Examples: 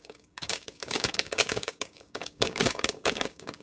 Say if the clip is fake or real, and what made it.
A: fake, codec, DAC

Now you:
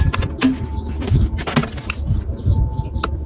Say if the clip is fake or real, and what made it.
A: real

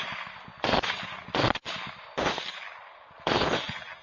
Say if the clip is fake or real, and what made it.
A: real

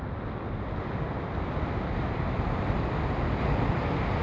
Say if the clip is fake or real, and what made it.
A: real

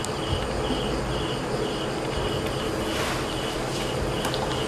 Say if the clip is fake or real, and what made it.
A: real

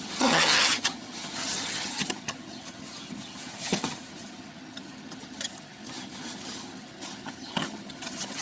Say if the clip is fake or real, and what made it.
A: fake, vocoder, HiFi-GAN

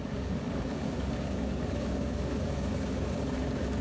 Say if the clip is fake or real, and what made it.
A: fake, codec, DAC